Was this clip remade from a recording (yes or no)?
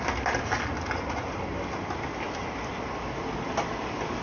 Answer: no